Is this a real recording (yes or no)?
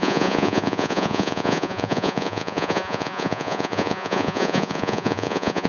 no